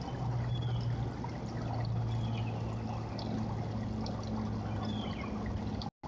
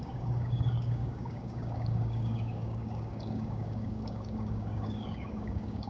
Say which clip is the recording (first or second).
first